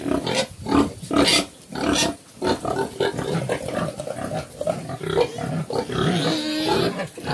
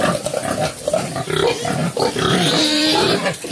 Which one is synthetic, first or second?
second